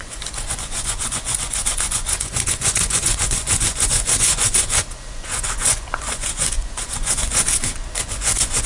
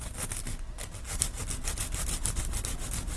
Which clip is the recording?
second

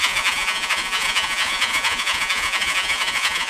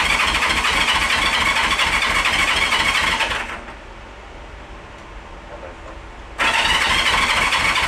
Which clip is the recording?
second